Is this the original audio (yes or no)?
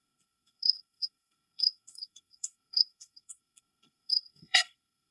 no